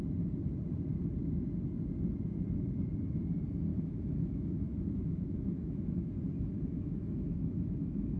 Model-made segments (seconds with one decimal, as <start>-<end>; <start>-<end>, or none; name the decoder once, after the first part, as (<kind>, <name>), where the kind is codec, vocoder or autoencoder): 3.7-6.1 (autoencoder, DAC-VAE); 6.5-8.2